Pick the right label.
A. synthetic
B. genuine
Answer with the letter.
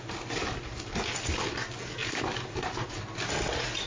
B